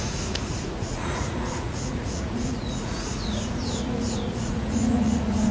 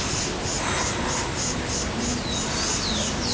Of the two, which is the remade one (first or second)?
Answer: first